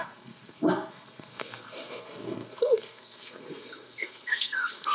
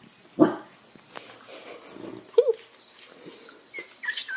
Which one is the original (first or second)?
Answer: second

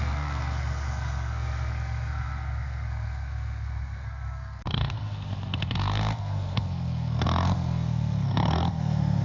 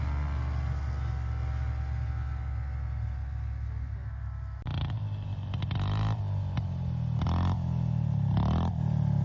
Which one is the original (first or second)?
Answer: second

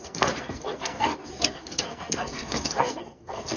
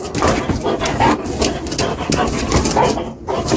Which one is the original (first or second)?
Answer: second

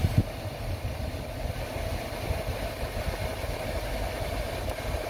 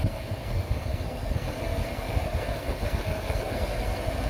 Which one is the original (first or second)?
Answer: first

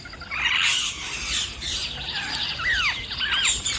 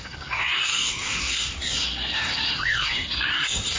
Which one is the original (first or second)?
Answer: first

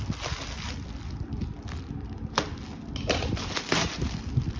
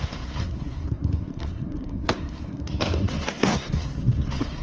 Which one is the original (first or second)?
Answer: first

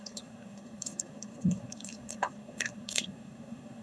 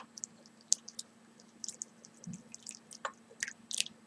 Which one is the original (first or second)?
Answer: second